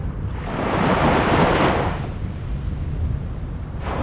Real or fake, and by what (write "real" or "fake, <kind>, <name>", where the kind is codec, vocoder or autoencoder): real